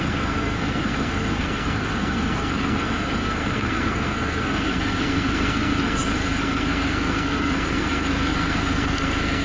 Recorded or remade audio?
remade